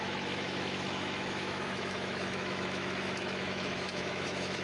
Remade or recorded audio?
remade